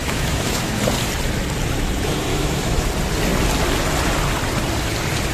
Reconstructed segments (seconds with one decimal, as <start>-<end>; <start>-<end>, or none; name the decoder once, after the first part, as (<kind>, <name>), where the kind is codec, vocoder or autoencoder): 0.0-0.8 (autoencoder, DAC-VAE); 2.3-2.9

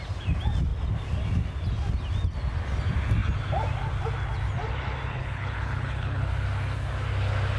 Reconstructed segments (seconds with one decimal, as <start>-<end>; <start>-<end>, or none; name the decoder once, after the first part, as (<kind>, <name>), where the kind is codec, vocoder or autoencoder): 5.1-6.3 (codec, HILCodec)

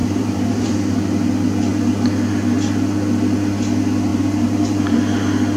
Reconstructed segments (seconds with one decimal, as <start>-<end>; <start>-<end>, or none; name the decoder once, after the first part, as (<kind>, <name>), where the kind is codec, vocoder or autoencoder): 0.0-0.7 (vocoder, BigVGAN v2); 4.1-5.0

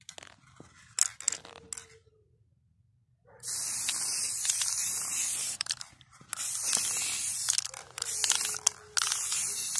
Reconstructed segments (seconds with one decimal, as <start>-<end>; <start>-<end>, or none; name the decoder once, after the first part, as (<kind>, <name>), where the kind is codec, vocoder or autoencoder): 5.1-6.3 (vocoder, BigVGAN v2)